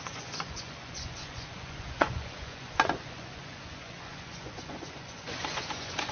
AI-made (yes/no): yes